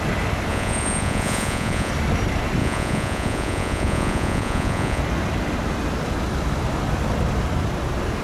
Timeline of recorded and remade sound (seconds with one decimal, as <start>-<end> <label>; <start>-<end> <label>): 0.0-0.5 recorded; 0.5-1.9 remade; 1.9-2.6 recorded; 2.6-5.0 remade; 5.0-8.2 recorded